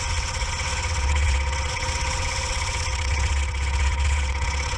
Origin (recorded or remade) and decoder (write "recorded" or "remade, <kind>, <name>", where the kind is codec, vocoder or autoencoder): remade, vocoder, WaveNeXt